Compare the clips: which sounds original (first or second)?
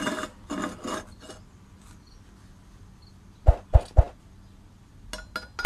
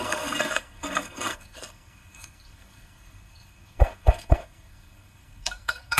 first